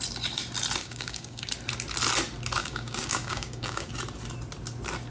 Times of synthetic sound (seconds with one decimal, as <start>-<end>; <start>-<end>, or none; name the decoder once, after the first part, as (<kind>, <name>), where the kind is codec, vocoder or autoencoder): 0.8-1.5 (codec, DAC); 2.6-3.9